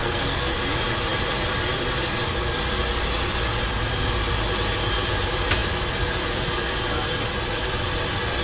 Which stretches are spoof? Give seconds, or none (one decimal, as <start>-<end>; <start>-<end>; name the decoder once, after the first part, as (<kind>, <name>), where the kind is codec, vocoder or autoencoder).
0.0-0.6 (codec, SNAC)

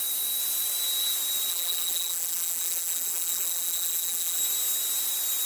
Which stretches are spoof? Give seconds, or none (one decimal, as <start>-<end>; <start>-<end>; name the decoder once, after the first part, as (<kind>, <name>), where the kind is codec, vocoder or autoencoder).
1.5-4.4 (vocoder, BigVGAN v2)

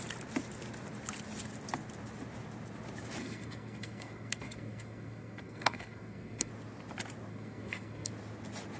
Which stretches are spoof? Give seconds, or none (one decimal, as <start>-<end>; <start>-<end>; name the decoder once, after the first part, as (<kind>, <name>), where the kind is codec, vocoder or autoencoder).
3.2-6.5 (codec, SNAC); 7.3-8.1

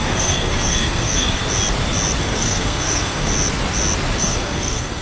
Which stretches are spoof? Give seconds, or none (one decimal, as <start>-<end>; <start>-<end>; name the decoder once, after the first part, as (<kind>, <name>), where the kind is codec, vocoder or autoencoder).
0.0-1.4 (codec, SNAC); 2.2-3.3; 4.2-5.0

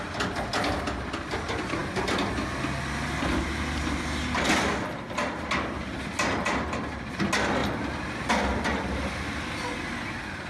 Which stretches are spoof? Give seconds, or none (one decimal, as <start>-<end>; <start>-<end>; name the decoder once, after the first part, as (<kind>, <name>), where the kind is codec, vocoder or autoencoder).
none

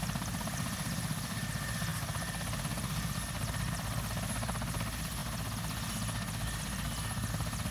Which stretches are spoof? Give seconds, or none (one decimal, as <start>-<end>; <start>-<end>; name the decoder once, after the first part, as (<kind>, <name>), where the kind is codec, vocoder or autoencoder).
none

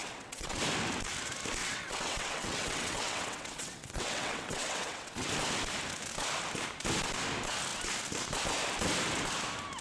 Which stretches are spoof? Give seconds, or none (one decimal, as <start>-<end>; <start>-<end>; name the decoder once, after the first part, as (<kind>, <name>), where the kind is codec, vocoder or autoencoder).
0.0-0.6 (vocoder, WaveNeXt); 1.6-5.3